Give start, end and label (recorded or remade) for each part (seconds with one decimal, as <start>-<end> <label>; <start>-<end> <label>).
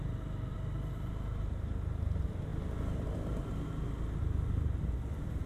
0.0-5.5 recorded